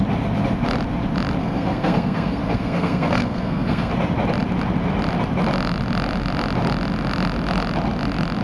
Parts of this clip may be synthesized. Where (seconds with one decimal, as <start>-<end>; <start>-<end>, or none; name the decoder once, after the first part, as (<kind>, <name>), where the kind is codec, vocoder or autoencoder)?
1.4-3.9 (codec, SNAC)